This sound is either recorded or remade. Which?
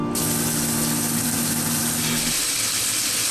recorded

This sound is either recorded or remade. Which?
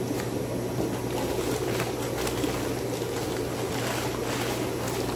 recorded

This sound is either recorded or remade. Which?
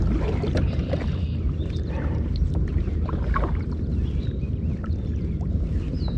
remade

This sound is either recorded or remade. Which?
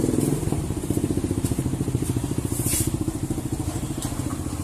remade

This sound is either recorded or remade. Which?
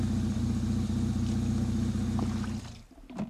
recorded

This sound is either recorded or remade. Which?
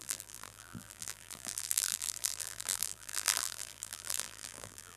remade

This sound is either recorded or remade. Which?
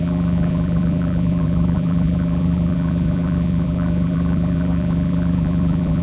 remade